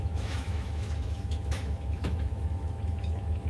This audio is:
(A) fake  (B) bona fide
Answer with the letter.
A